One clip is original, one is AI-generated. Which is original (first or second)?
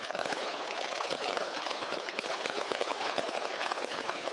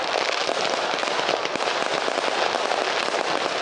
second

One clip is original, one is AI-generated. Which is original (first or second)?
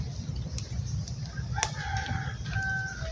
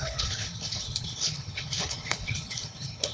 first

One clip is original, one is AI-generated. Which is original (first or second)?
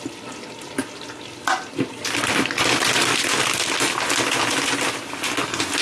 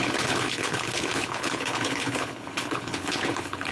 first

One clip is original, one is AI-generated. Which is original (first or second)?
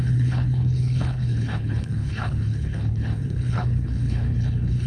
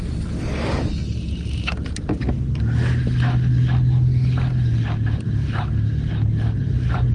second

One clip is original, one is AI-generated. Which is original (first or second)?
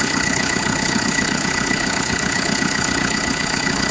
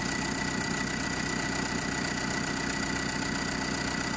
second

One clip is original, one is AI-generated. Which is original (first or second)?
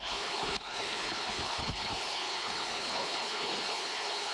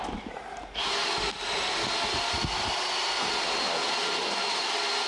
second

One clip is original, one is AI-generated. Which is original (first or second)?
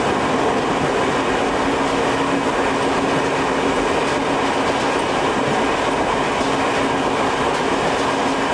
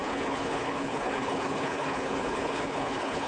first